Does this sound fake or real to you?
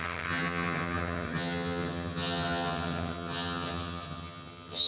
fake